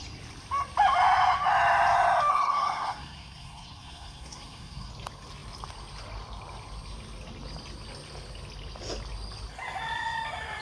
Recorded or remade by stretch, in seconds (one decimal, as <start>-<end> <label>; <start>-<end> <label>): 0.0-2.3 recorded; 2.3-4.9 remade; 4.9-10.6 recorded